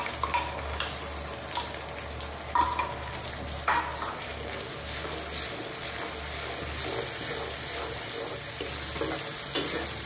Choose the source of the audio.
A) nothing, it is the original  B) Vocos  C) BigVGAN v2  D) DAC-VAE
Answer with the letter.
A